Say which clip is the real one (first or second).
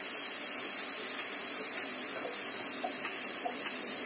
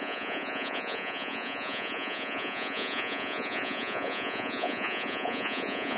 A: first